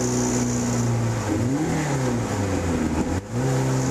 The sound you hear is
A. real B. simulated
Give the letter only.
A